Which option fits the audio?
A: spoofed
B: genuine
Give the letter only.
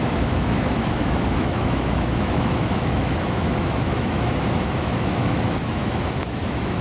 A